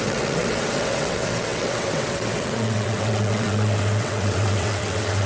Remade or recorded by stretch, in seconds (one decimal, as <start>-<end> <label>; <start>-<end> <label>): 0.0-5.3 remade